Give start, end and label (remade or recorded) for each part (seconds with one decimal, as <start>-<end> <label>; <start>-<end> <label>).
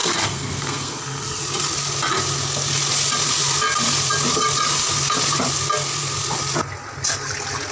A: 0.0-1.4 remade; 1.4-7.7 recorded